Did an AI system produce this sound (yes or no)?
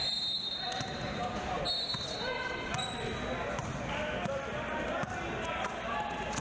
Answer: no